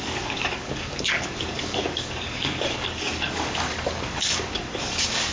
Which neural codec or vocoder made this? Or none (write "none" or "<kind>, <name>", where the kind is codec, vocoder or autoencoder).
codec, DAC